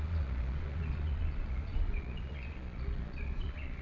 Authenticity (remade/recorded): remade